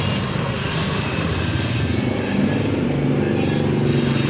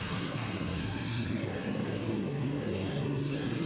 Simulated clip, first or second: second